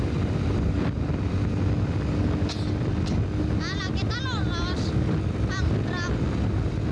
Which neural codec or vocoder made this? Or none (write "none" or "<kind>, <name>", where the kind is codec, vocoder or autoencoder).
none